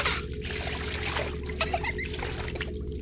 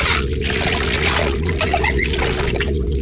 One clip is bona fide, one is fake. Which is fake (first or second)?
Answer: second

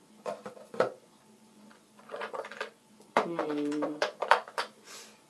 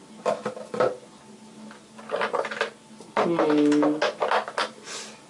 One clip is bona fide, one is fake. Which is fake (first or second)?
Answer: first